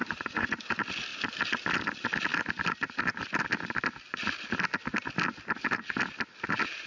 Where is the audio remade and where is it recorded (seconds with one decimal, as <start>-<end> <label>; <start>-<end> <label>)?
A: 0.0-0.6 remade; 0.6-6.9 recorded

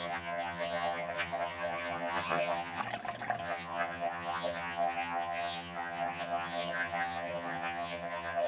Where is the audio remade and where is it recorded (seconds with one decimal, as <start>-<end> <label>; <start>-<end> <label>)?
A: 0.0-2.8 remade; 2.8-3.4 recorded; 3.4-8.5 remade

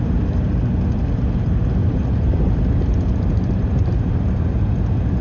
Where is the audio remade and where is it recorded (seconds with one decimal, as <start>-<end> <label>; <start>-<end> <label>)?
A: 0.0-1.8 recorded; 1.8-4.7 remade; 4.7-5.2 recorded

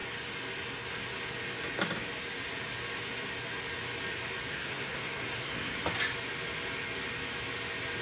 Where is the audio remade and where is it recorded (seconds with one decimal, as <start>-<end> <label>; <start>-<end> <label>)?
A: 0.0-4.5 recorded; 4.5-5.8 remade; 5.8-8.0 recorded

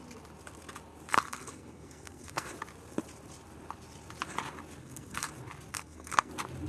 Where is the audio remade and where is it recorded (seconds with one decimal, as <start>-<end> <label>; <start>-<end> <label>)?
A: 0.0-1.1 recorded; 1.1-2.5 remade; 2.5-4.8 recorded; 4.8-5.3 remade; 5.3-5.7 recorded; 5.7-6.3 remade; 6.3-6.7 recorded